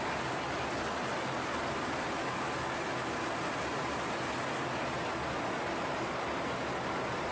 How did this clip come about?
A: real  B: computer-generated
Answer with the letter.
A